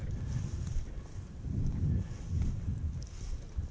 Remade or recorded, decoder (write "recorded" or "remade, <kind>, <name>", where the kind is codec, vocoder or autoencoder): recorded